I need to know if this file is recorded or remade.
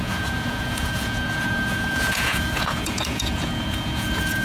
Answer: remade